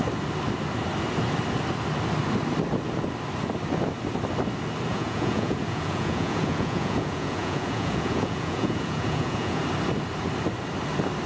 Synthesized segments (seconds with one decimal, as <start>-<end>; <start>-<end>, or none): 4.9-9.6